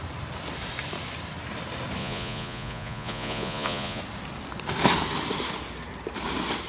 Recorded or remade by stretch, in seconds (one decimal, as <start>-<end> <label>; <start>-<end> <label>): 0.0-2.0 recorded; 2.0-4.0 remade; 4.0-6.7 recorded